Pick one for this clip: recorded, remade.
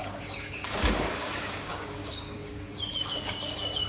remade